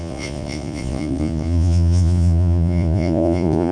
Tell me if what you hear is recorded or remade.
remade